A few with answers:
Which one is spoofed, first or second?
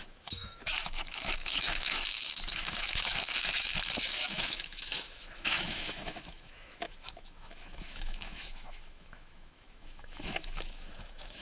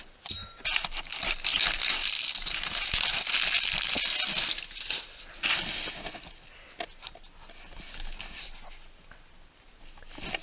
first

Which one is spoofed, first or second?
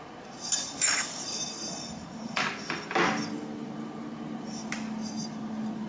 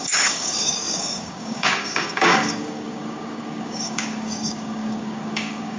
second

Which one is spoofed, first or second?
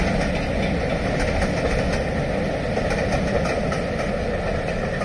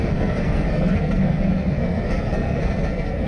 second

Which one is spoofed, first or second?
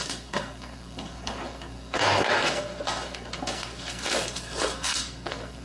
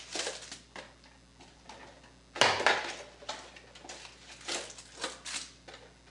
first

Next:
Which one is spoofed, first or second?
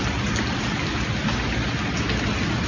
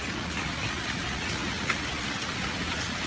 second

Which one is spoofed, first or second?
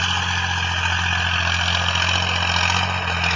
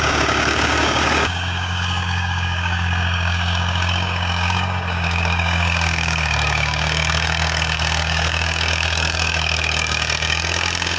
second